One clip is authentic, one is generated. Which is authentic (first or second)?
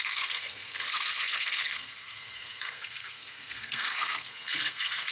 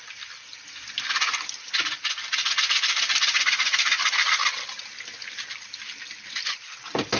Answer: second